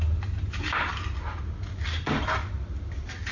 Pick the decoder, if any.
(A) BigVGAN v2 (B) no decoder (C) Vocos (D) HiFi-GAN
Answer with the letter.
B